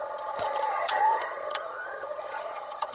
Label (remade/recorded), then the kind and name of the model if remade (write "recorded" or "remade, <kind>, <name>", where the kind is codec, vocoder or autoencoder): remade, vocoder, HiFi-GAN